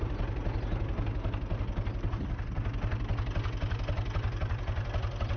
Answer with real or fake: real